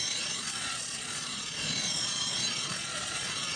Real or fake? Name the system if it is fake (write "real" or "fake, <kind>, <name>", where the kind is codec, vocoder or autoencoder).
fake, vocoder, Vocos